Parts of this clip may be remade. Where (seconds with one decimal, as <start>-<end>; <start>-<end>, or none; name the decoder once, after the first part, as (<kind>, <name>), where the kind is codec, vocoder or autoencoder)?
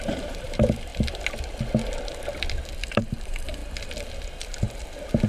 0.0-0.9 (vocoder, BigVGAN v2); 2.8-3.6; 4.6-5.3